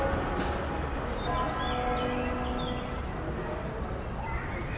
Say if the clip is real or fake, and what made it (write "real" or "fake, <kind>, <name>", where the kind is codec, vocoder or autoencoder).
real